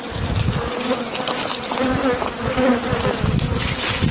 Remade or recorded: recorded